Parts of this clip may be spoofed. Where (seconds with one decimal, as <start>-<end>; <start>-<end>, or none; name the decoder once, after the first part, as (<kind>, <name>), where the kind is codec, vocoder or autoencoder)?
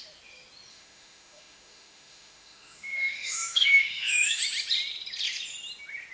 0.7-4.4 (autoencoder, DAC-VAE)